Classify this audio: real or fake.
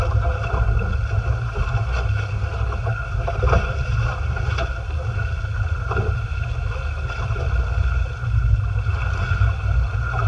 real